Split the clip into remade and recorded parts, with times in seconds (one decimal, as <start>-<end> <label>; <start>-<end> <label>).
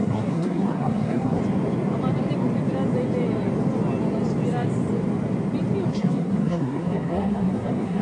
0.0-1.4 remade; 1.4-5.9 recorded; 5.9-8.0 remade